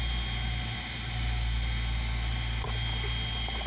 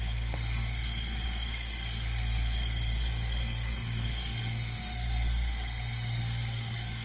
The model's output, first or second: second